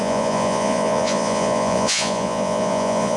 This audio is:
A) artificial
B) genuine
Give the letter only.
A